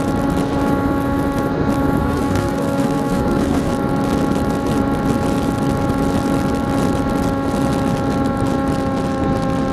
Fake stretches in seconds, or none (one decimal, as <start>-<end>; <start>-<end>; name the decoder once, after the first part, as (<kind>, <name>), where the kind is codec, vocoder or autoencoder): 2.0-3.7 (codec, SNAC)